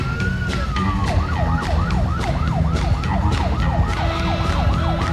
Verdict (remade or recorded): recorded